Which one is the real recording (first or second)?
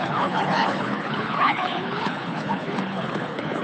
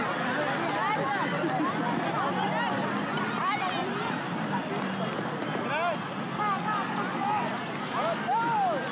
second